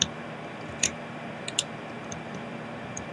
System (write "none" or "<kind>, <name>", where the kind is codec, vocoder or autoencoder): vocoder, BigVGAN v2